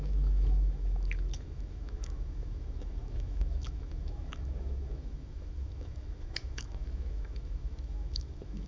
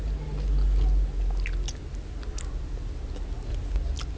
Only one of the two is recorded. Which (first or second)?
second